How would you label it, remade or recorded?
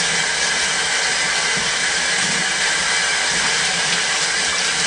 recorded